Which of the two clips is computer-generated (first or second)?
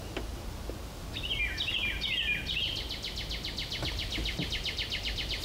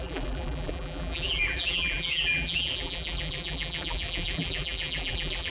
second